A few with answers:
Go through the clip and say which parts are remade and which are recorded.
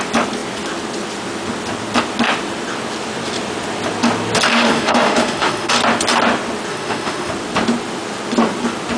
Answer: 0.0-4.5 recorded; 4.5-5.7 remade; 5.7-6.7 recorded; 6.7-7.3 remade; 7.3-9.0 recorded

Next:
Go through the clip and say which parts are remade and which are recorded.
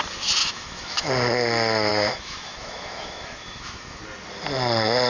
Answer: 0.0-0.4 recorded; 0.4-1.1 remade; 1.1-1.9 recorded; 1.9-4.0 remade; 4.0-5.1 recorded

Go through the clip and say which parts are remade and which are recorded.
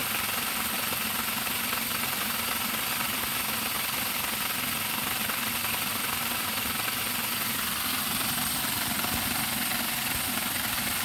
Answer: 0.0-2.5 remade; 2.5-11.0 recorded